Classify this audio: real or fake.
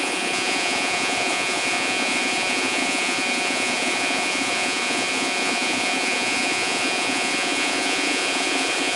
fake